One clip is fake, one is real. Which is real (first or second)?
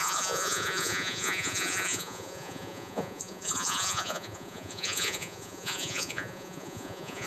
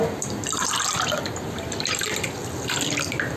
second